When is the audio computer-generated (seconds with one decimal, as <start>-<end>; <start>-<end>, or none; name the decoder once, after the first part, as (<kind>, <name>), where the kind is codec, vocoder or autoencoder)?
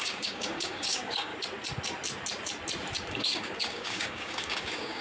0.0-1.3 (codec, DAC); 3.1-5.0